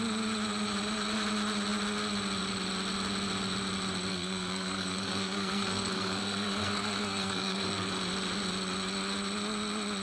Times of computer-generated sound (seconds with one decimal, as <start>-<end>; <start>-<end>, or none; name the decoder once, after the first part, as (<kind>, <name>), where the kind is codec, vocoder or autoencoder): 4.1-7.9 (codec, SNAC)